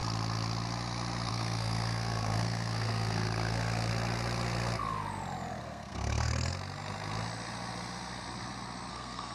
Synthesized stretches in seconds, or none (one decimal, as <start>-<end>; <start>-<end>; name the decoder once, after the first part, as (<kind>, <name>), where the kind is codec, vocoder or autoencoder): 1.3-3.9 (codec, SNAC); 5.6-6.3; 8.9-9.3